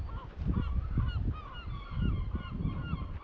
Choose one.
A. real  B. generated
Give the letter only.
A